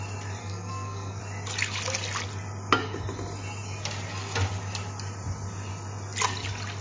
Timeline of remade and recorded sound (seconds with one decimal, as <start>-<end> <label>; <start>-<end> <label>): 0.0-0.4 recorded; 0.4-1.2 remade; 1.2-6.8 recorded